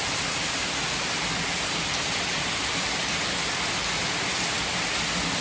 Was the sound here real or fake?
real